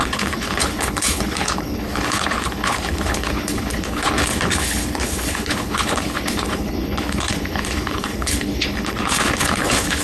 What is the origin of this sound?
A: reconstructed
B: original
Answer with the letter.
A